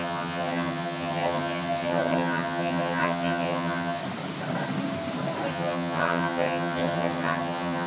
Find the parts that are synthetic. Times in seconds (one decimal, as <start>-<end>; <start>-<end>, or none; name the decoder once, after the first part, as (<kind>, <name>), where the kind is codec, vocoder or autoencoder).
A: 0.0-4.0 (vocoder, HiFi-GAN); 5.5-7.9